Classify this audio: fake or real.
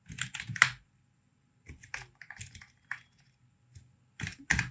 real